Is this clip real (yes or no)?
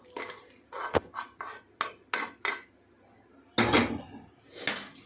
yes